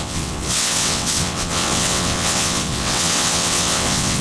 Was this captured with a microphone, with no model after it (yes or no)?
no